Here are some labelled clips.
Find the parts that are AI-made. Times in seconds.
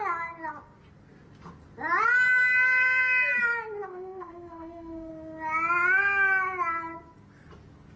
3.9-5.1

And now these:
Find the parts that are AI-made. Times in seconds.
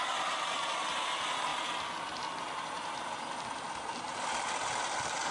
none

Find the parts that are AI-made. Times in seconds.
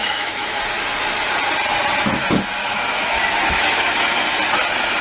0.0-0.6; 2.6-4.2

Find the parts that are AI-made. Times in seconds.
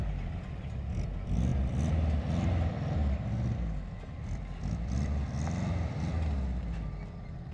none